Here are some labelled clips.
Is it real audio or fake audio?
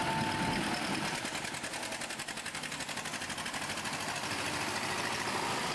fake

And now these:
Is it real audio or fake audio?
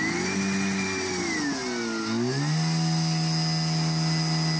real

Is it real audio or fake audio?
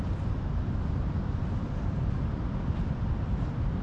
real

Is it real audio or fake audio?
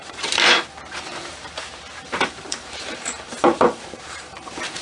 fake